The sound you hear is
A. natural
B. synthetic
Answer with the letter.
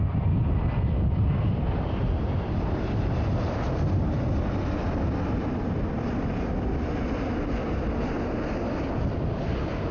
A